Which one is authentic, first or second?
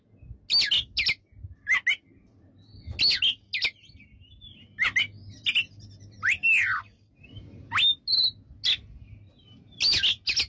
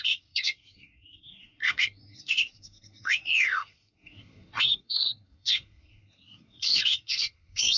first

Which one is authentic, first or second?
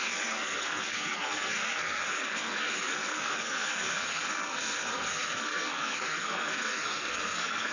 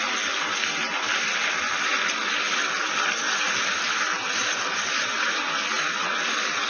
second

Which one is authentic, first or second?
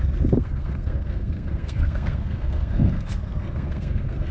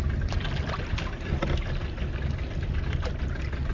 second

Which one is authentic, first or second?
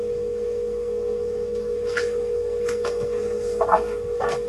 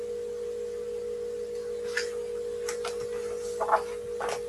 second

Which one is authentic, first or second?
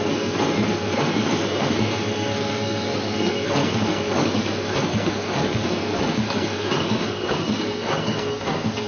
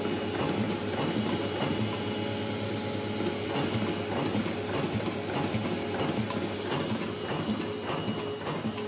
second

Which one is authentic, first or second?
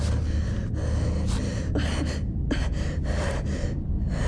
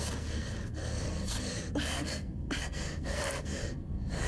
first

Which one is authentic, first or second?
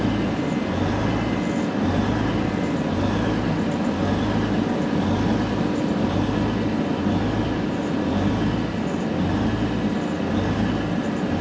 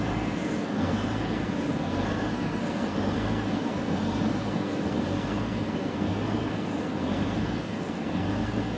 first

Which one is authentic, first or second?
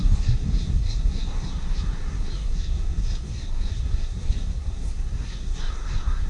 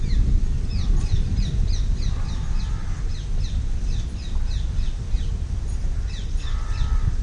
second